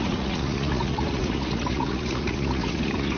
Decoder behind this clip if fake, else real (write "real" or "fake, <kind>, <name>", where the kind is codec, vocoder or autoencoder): fake, vocoder, Vocos